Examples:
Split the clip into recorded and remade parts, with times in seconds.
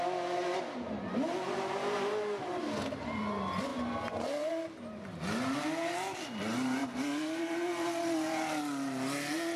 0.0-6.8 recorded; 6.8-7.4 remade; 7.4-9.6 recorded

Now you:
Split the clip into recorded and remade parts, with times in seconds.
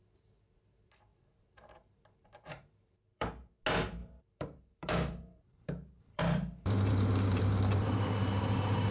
0.0-1.1 recorded; 1.1-3.5 remade; 3.5-4.0 recorded; 4.0-8.9 remade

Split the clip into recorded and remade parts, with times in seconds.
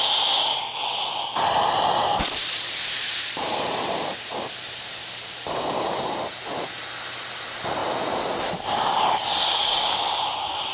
0.0-2.1 recorded; 2.1-6.2 remade; 6.2-7.8 recorded; 7.8-9.2 remade; 9.2-10.7 recorded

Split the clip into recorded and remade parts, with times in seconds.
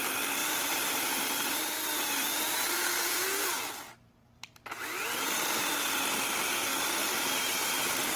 0.0-0.4 recorded; 0.4-3.7 remade; 3.7-7.0 recorded; 7.0-8.2 remade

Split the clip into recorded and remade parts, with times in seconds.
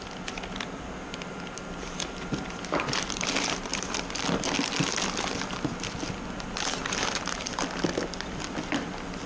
0.0-9.3 recorded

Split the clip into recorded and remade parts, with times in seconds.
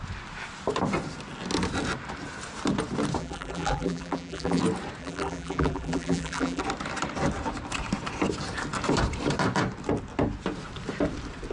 0.0-3.2 recorded; 3.2-4.6 remade; 4.6-5.0 recorded; 5.0-6.6 remade; 6.6-11.5 recorded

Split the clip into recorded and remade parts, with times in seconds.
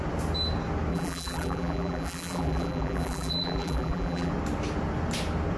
0.0-0.9 recorded; 0.9-4.3 remade; 4.3-5.6 recorded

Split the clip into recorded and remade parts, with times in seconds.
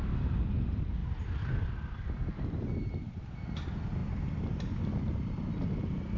0.0-6.2 recorded